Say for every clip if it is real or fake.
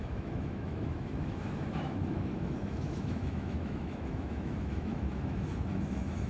fake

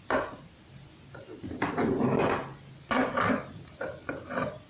fake